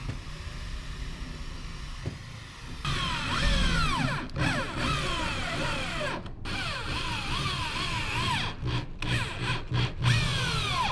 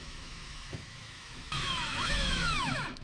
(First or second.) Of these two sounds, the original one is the first